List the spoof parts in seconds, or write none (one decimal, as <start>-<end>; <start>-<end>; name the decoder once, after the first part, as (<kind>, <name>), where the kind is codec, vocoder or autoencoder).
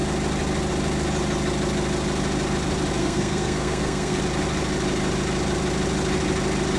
3.0-4.2 (codec, SNAC)